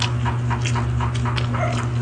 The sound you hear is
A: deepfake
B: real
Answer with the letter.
B